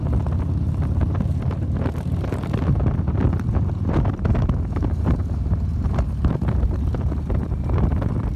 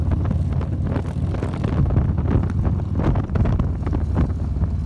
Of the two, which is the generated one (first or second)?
first